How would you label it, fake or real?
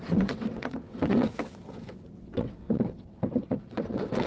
fake